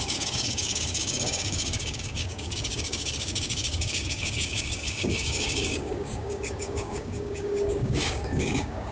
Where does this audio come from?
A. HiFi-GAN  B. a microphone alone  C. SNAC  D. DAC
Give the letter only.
D